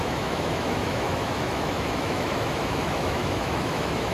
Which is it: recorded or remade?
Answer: remade